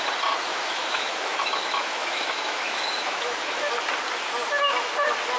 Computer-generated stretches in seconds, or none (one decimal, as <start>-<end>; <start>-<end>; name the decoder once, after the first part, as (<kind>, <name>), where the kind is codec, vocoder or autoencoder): 0.5-3.7 (autoencoder, DAC-VAE)